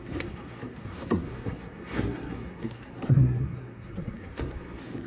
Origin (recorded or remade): remade